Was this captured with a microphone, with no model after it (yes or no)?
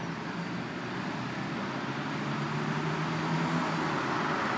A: yes